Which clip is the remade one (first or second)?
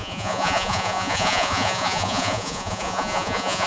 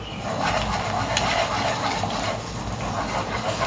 first